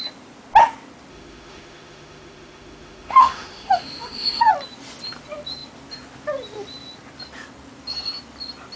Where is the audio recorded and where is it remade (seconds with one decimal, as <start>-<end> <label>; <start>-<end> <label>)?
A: 0.0-1.1 recorded; 1.1-4.5 remade; 4.5-8.8 recorded